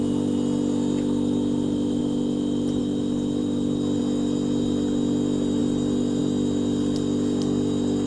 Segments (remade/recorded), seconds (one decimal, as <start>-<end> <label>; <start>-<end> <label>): 0.0-8.1 recorded